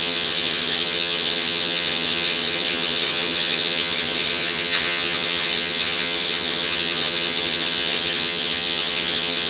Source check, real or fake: fake